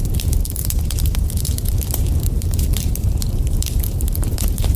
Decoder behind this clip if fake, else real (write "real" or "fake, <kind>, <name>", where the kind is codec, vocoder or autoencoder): fake, vocoder, BigVGAN v2